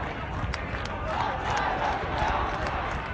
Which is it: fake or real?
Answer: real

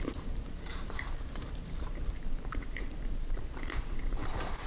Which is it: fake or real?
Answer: fake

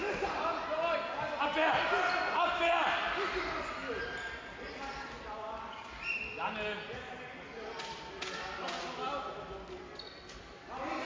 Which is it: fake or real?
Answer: real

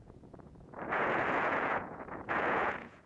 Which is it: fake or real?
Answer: fake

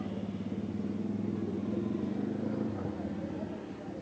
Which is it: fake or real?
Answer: real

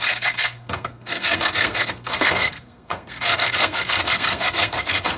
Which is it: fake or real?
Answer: fake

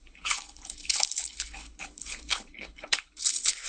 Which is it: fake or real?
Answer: fake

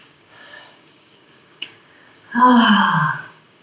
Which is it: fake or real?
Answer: fake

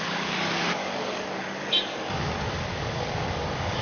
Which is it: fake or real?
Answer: fake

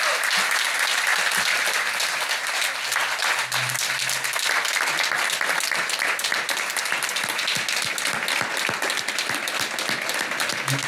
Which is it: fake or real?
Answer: real